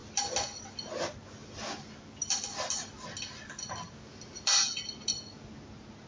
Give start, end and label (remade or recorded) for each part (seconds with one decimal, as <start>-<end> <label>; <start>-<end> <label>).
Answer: 0.0-1.4 recorded; 1.4-2.8 remade; 2.8-6.1 recorded